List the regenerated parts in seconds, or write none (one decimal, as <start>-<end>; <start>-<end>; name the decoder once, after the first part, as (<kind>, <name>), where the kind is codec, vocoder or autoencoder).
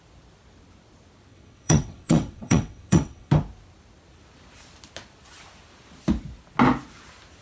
1.3-3.3 (vocoder, WaveNeXt)